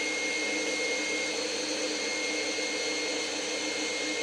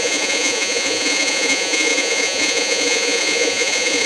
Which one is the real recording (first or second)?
first